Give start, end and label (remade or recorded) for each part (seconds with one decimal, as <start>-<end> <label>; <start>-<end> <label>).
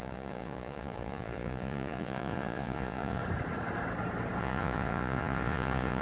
0.0-3.2 remade; 3.2-4.4 recorded; 4.4-6.0 remade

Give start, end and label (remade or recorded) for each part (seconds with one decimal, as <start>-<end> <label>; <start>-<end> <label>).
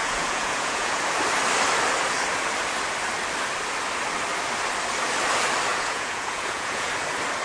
0.0-1.0 remade; 1.0-5.7 recorded; 5.7-6.9 remade; 6.9-7.4 recorded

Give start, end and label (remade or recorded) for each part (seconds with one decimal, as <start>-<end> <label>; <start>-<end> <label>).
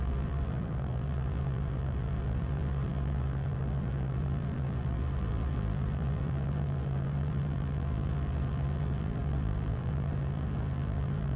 0.0-11.4 remade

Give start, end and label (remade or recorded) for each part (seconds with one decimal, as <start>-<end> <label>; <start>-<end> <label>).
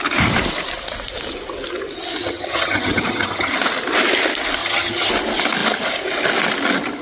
0.0-2.2 recorded; 2.2-3.5 remade; 3.5-4.6 recorded; 4.6-5.1 remade; 5.1-7.0 recorded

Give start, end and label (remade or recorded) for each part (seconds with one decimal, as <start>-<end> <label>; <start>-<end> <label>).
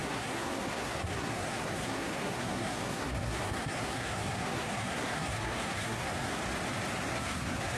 0.0-6.4 remade; 6.4-7.1 recorded; 7.1-7.8 remade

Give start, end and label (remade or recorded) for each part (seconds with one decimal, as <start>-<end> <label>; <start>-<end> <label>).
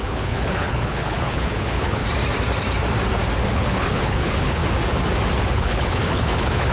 0.0-2.0 remade; 2.0-3.5 recorded; 3.5-4.6 remade; 4.6-5.4 recorded; 5.4-6.7 remade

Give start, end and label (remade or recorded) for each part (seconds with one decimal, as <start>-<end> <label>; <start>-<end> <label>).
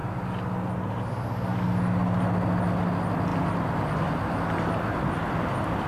0.0-5.9 recorded